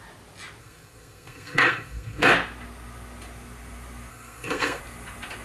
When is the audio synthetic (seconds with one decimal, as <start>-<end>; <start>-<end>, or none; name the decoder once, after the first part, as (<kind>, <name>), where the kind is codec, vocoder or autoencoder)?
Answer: 0.6-2.3 (codec, SNAC); 4.1-4.8